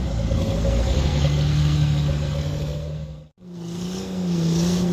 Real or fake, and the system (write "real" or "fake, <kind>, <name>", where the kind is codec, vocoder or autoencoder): fake, codec, SNAC